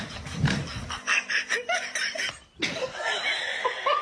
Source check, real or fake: fake